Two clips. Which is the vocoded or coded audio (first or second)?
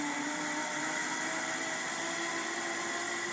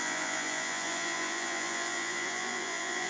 second